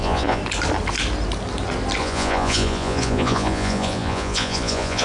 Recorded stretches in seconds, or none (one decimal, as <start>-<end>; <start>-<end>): 0.4-2.0